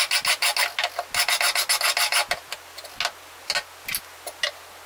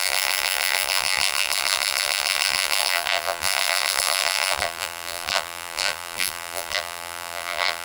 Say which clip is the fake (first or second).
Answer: second